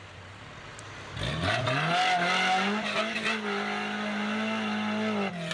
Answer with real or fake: real